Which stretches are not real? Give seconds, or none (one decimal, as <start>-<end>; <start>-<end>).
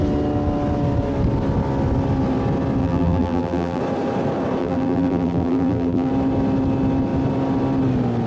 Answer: 2.8-3.8; 4.6-6.1